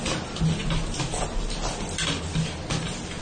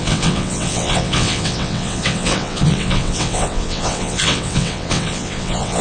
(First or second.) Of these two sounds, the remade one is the second